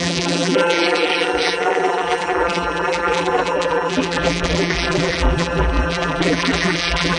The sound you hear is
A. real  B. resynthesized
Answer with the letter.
B